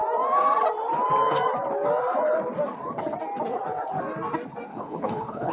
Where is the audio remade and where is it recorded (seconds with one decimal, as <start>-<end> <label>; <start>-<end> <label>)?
0.0-4.7 recorded; 4.7-5.5 remade